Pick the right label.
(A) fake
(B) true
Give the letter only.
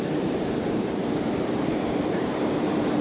A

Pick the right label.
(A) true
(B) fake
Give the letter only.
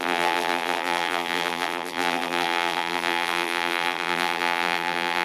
B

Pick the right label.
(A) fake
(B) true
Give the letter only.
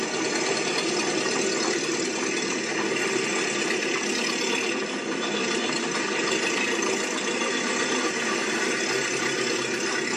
A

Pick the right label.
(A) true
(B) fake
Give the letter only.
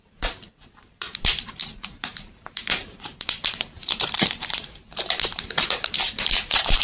B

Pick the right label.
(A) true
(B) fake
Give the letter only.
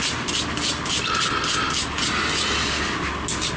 A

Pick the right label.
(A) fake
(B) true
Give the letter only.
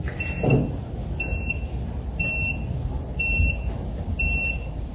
B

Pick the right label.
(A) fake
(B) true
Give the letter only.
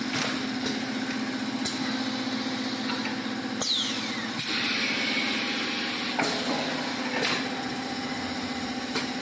B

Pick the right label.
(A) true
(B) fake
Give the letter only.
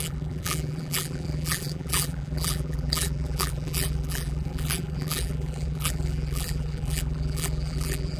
B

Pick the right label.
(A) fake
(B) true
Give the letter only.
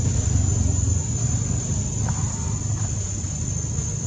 B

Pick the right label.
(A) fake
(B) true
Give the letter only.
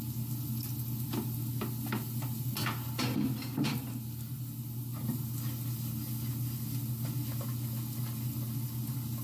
B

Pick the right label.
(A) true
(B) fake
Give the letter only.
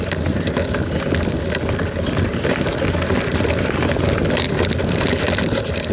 A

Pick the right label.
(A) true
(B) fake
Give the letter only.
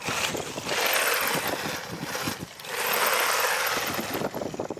A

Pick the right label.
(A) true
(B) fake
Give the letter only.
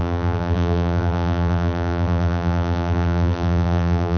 B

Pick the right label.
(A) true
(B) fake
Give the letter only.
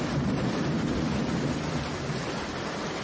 B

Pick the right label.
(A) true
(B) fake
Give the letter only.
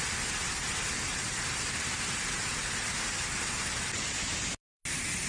A